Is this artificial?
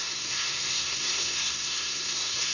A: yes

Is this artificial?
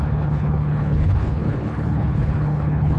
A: yes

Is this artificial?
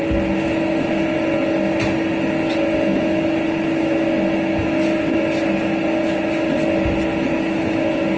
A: no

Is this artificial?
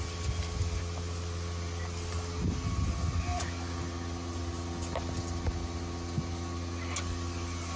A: no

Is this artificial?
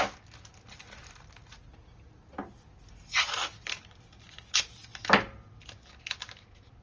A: no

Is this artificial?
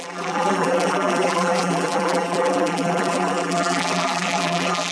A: yes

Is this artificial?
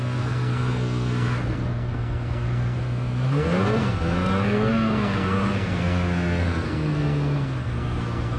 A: yes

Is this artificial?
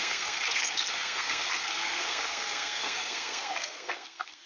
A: yes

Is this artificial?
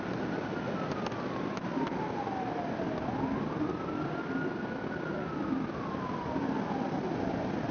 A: no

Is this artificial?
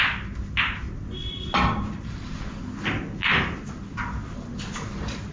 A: no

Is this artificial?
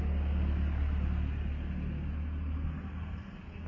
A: no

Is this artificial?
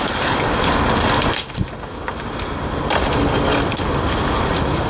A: no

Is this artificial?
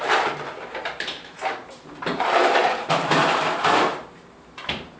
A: yes